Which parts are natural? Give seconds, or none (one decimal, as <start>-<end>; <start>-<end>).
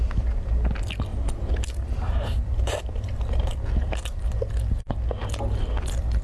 0.0-1.1; 4.2-6.2